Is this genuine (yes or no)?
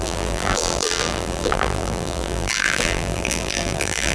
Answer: no